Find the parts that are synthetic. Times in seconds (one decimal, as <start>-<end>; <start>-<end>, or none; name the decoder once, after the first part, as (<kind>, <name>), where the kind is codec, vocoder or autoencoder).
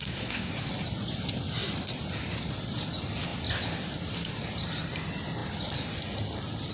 0.0-0.5 (codec, SNAC)